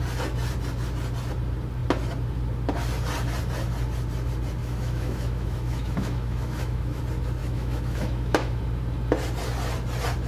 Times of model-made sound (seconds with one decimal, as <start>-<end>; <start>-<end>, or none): 4.6-7.0; 7.4-8.6